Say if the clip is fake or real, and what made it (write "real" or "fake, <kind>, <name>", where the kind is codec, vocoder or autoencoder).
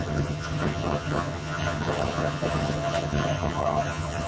fake, vocoder, HiFi-GAN